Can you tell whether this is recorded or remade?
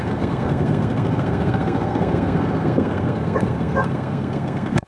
remade